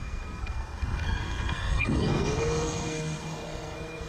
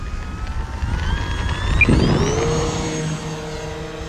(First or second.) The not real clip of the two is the first